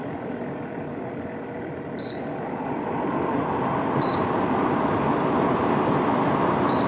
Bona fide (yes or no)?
yes